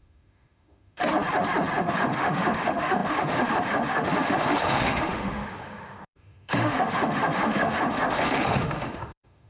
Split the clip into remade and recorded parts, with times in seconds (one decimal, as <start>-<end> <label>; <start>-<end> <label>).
0.0-1.0 remade; 1.0-1.8 recorded; 1.8-9.5 remade